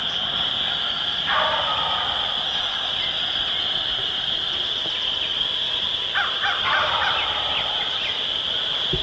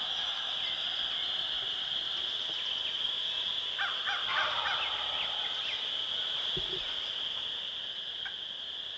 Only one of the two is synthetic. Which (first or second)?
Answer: first